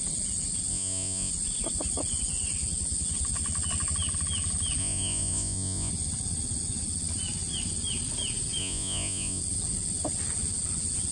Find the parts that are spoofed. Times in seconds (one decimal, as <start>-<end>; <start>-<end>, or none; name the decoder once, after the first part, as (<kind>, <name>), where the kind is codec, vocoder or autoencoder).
0.7-1.3 (vocoder, Vocos); 4.8-5.9; 8.6-9.4